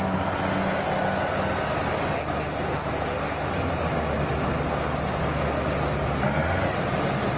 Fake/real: real